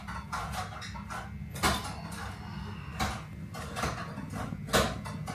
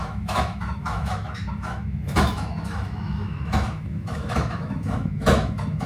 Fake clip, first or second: second